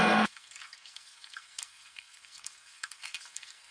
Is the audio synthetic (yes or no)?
yes